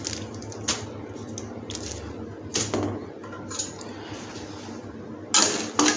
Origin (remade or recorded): recorded